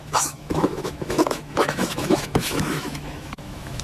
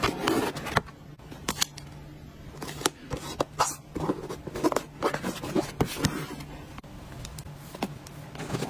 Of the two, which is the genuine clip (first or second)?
second